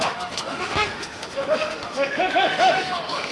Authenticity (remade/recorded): remade